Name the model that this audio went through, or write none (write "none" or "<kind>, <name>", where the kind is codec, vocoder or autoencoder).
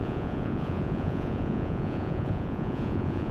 vocoder, Vocos